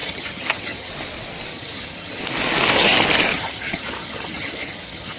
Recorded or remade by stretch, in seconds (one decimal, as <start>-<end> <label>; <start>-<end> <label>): 0.0-0.9 remade; 0.9-1.5 recorded; 1.5-2.2 remade; 2.2-3.3 recorded; 3.3-5.2 remade